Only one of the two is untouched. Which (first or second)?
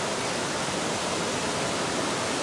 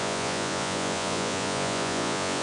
first